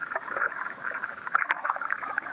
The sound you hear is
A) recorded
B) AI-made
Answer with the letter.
B